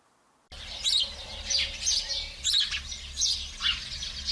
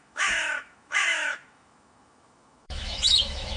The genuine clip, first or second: first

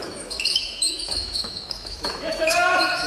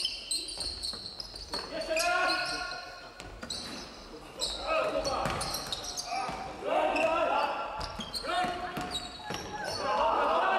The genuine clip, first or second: second